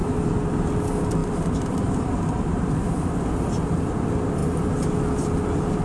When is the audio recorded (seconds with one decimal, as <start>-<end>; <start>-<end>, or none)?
0.7-1.2; 3.1-5.8